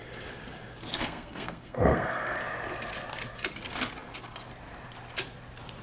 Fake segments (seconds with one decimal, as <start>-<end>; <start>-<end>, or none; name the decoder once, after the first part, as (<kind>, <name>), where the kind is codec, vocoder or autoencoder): 0.9-2.4 (codec, SNAC)